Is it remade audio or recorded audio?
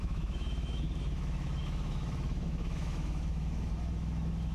remade